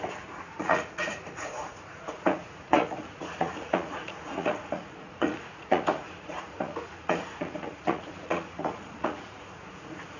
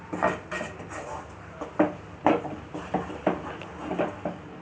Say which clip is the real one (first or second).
second